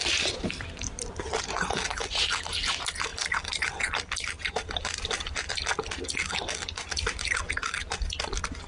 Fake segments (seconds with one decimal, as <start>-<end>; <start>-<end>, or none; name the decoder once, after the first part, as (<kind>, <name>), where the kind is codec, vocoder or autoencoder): 0.0-1.3 (vocoder, BigVGAN v2); 3.1-5.1